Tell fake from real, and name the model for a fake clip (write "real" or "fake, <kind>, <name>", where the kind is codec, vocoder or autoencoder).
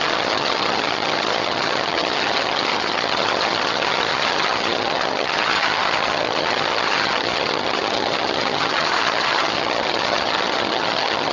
fake, vocoder, HiFi-GAN